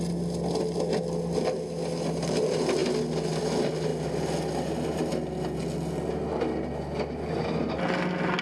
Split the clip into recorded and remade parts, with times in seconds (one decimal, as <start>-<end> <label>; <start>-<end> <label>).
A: 0.0-8.4 recorded